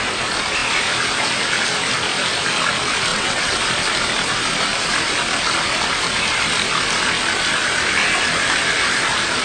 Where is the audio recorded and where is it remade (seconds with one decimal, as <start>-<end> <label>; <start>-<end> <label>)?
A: 0.0-3.1 recorded; 3.1-3.6 remade; 3.6-9.4 recorded